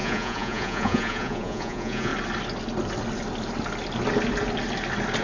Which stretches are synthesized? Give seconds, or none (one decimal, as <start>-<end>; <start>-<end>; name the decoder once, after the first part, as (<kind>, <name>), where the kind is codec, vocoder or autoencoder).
0.0-2.1 (vocoder, Vocos)